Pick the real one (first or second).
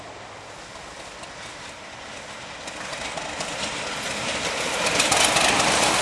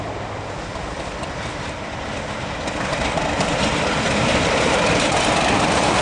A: first